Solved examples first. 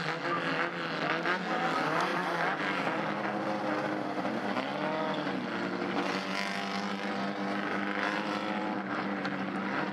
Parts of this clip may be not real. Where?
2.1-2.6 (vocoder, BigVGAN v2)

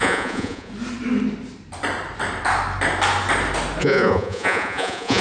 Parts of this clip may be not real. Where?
0.0-0.7 (vocoder, Vocos); 3.8-5.2